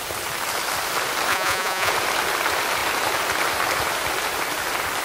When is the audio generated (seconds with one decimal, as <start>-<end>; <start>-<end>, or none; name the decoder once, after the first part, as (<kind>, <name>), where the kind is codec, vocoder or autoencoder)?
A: 1.3-1.9 (vocoder, Vocos)